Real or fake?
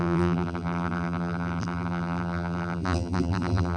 fake